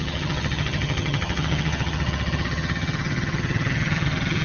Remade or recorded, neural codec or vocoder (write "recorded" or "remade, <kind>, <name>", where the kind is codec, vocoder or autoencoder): remade, vocoder, HiFi-GAN